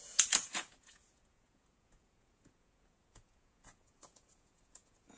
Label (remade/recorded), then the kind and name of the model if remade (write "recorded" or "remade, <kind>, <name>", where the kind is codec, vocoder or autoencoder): remade, vocoder, Vocos